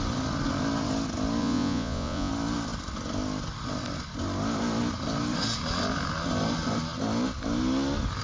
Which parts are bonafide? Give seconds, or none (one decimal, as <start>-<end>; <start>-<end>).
0.0-1.4; 2.3-8.2